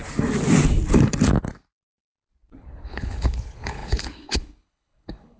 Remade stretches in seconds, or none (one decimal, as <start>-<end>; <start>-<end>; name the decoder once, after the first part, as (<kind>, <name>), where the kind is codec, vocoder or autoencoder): 2.5-5.4 (codec, HILCodec)